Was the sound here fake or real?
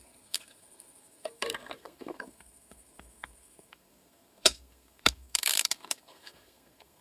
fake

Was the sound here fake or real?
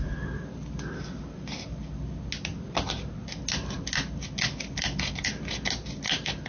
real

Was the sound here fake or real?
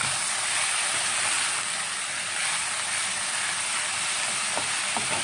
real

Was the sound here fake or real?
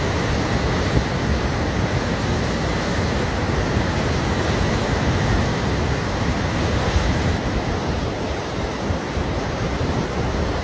real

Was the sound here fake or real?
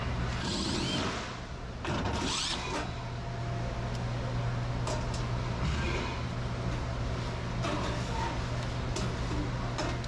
real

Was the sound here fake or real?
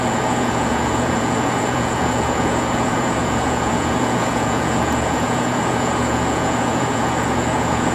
fake